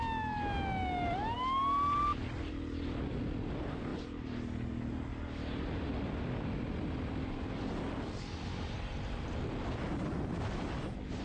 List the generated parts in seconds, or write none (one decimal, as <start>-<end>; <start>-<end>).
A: none